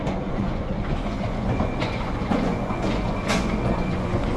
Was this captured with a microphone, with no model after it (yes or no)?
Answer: no